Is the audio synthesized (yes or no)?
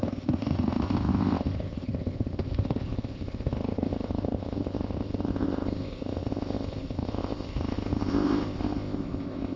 yes